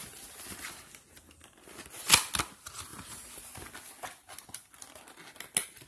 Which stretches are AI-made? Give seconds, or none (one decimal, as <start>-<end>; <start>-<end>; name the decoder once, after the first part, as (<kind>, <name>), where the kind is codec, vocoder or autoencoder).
none